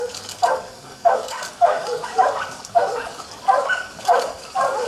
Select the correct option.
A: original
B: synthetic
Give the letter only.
B